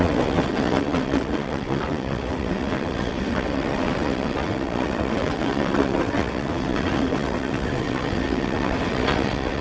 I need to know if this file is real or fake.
fake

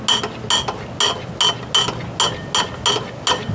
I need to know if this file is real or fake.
real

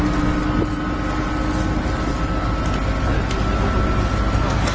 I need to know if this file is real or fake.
real